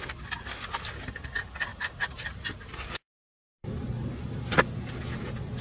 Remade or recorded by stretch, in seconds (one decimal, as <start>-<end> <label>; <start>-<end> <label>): 0.0-1.7 recorded; 1.7-3.1 remade; 3.1-3.5 recorded; 3.5-4.6 remade; 4.6-5.6 recorded